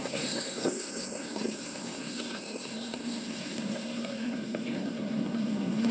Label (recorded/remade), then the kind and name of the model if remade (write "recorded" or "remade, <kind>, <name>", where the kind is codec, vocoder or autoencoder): remade, codec, SNAC